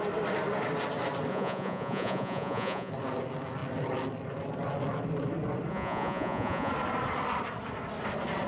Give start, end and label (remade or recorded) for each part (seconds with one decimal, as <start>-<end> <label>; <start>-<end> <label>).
0.0-1.3 recorded; 1.3-2.9 remade; 2.9-5.7 recorded; 5.7-6.7 remade; 6.7-8.5 recorded